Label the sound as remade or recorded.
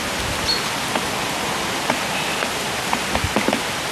remade